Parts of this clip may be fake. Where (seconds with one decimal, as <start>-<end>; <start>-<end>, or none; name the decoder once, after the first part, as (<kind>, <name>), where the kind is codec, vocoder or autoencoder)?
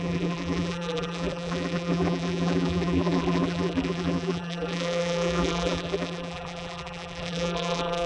0.0-8.1 (vocoder, BigVGAN v2)